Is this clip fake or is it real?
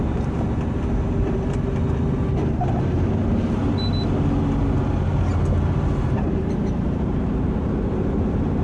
real